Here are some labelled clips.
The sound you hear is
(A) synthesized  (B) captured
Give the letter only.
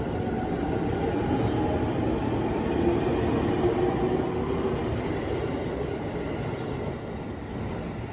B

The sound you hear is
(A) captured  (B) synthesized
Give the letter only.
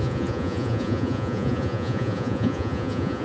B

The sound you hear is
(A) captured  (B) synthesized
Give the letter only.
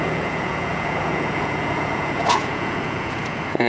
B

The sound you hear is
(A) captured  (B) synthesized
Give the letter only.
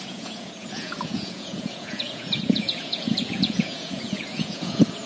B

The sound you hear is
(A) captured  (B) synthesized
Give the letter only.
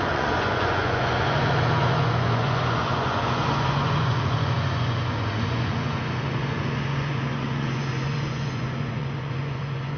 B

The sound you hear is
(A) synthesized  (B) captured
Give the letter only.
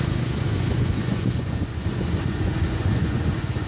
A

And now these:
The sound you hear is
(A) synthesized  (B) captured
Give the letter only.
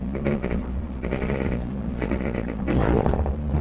A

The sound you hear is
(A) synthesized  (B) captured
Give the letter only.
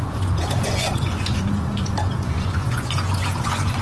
A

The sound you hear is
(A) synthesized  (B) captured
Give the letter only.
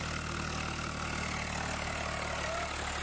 B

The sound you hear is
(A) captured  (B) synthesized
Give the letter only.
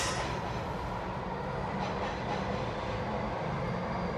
A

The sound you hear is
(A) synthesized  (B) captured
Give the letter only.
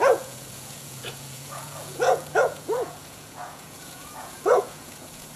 A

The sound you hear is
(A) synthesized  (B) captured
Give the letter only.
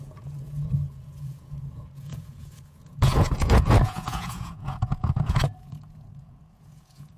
A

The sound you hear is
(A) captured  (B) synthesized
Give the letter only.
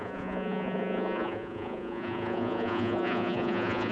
B